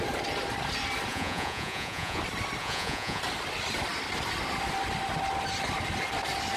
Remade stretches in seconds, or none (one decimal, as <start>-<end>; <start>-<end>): 1.1-2.2; 2.6-3.2